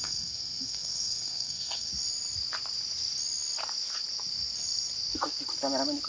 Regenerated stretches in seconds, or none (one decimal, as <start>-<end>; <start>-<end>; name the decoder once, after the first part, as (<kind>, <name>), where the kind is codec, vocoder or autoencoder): 0.0-1.9 (codec, SNAC)